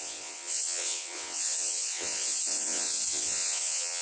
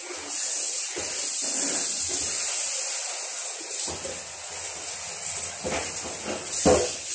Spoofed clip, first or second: first